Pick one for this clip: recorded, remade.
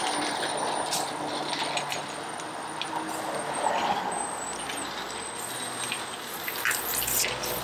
recorded